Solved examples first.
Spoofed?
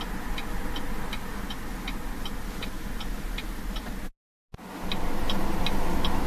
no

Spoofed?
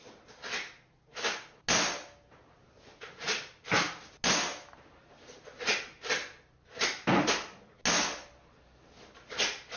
no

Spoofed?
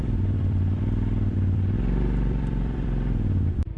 yes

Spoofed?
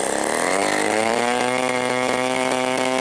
yes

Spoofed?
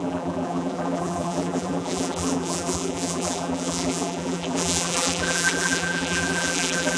yes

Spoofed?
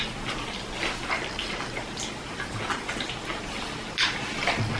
no